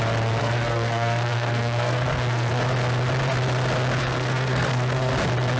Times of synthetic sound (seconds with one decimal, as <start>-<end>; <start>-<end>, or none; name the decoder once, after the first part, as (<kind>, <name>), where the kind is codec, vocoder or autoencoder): 0.4-2.5 (codec, SNAC); 4.0-5.1